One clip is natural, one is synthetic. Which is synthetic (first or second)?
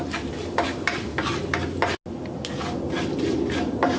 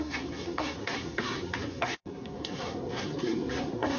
second